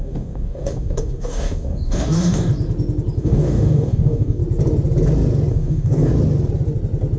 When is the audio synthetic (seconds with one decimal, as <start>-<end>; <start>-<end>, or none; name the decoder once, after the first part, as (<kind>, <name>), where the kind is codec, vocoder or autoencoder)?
0.0-2.5 (codec, DAC); 3.2-4.4; 5.5-6.1